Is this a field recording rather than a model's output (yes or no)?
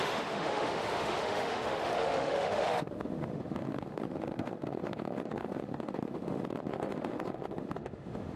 no